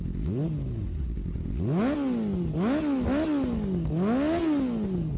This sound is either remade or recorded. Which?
recorded